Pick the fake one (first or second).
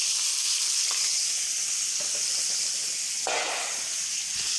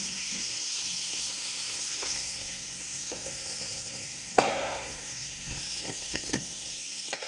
second